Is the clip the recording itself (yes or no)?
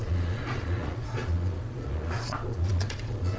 no